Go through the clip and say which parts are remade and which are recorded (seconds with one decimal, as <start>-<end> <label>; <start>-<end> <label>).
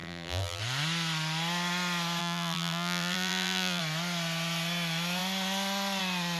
0.0-0.6 remade; 0.6-2.2 recorded; 2.2-3.8 remade; 3.8-6.4 recorded